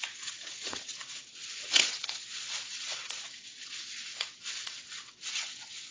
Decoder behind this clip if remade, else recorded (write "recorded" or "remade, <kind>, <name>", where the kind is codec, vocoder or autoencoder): remade, vocoder, WaveNeXt